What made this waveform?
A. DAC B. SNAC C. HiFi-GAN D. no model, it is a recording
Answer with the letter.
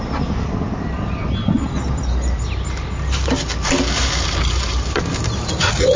D